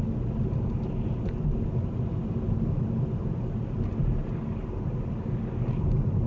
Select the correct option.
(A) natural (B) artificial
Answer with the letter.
A